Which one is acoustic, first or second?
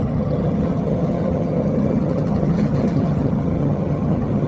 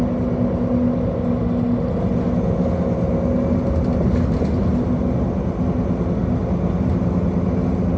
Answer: second